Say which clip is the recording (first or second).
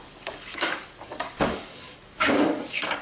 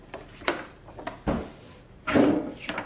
second